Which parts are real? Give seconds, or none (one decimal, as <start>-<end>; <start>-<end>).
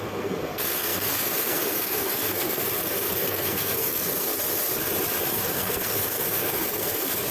4.3-5.2